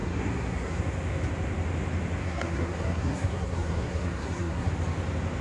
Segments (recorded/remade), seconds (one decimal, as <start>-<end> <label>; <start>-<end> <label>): 0.0-0.8 remade; 0.8-2.2 recorded; 2.2-4.7 remade; 4.7-5.4 recorded